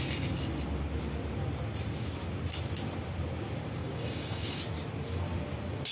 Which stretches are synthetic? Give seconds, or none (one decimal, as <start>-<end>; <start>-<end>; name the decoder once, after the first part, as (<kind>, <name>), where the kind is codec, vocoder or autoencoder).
3.8-4.6 (codec, DAC)